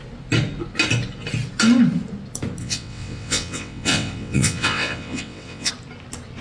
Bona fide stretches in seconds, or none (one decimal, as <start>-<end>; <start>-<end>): 0.0-2.6; 5.7-6.4